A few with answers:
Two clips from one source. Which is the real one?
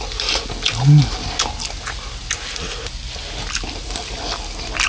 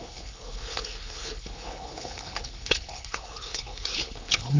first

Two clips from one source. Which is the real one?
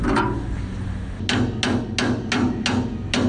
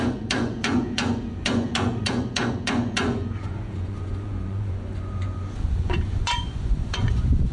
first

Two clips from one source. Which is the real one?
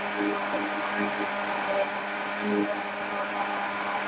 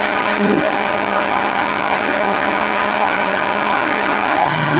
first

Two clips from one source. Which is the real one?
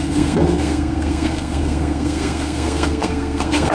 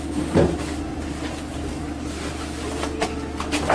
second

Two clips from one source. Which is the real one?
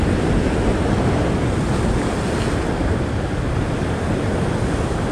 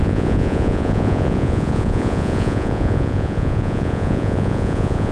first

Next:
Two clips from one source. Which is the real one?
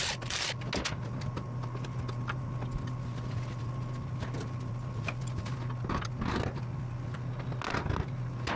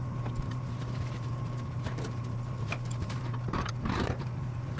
first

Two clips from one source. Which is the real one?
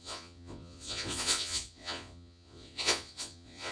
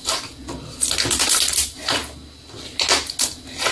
second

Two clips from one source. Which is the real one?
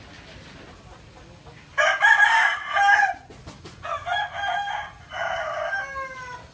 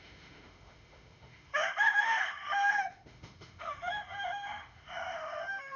first